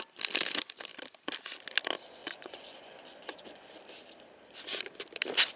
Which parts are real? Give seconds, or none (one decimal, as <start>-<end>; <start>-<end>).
0.0-2.2; 3.7-5.6